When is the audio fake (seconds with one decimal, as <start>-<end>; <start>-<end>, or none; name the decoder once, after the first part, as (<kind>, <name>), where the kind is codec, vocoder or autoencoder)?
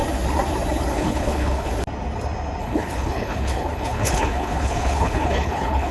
0.9-1.7 (codec, HILCodec); 2.6-5.9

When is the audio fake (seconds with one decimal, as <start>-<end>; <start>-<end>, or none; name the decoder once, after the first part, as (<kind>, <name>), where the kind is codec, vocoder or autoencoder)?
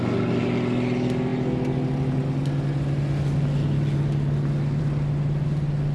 none